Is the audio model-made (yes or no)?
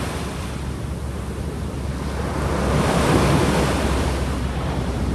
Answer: no